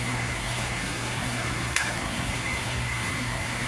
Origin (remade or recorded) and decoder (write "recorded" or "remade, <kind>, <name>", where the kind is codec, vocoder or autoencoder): remade, codec, SNAC